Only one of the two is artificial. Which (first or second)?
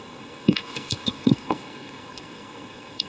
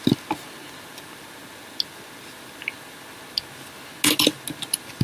first